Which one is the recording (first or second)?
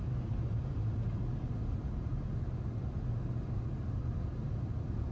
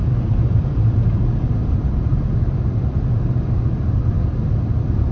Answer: first